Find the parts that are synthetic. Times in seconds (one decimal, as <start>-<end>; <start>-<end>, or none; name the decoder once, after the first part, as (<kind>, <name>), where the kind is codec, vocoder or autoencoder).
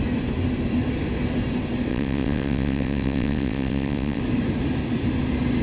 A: 1.9-4.2 (vocoder, WaveNeXt)